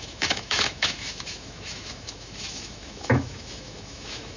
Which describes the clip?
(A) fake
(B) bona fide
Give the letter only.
A